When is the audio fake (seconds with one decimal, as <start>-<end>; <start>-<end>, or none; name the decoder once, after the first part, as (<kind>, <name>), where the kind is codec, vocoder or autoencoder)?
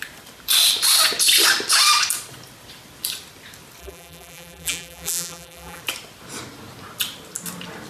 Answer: 3.8-5.8 (vocoder, BigVGAN v2)